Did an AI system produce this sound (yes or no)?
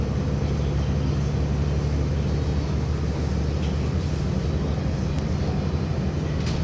no